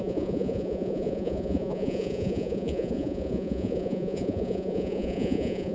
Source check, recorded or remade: remade